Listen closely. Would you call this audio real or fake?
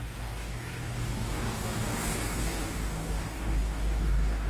fake